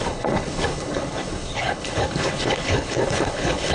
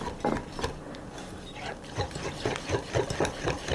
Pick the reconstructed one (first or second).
first